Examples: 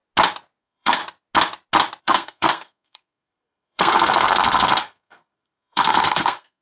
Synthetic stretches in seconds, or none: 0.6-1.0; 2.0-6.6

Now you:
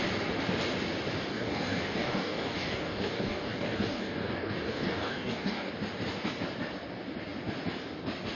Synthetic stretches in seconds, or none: 1.3-5.7

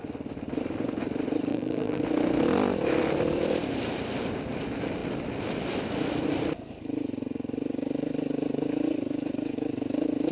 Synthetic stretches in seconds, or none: 1.5-2.0

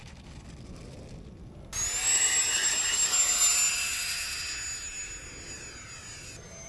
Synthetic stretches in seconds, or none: none

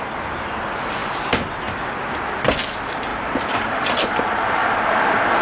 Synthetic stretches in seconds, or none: 4.6-5.4

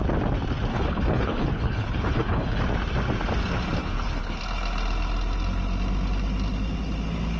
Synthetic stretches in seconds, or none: 0.7-2.6; 3.8-4.4

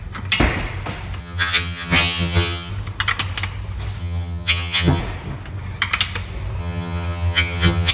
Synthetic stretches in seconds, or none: 1.2-2.7; 4.0-5.0; 6.6-7.9